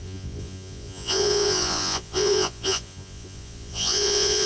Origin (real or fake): fake